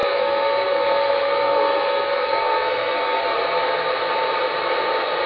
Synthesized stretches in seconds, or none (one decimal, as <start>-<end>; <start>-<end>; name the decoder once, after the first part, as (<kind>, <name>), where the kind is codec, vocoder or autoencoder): 0.0-3.2 (codec, SNAC)